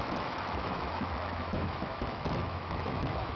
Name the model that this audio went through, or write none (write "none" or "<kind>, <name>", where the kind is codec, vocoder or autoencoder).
autoencoder, DAC-VAE